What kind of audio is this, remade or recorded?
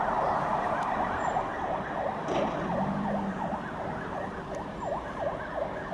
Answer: recorded